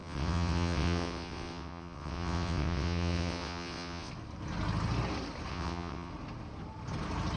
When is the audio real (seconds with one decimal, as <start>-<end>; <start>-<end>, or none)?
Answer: 4.1-5.5; 6.1-7.4